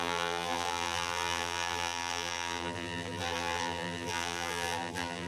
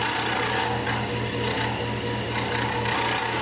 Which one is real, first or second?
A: second